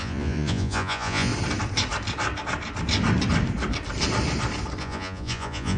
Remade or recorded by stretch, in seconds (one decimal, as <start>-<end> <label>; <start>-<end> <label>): 0.0-1.3 remade; 1.3-4.8 recorded; 4.8-5.8 remade